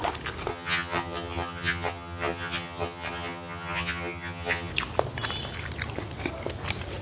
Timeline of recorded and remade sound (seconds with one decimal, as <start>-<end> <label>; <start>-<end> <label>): 0.0-0.5 recorded; 0.5-4.7 remade; 4.7-7.0 recorded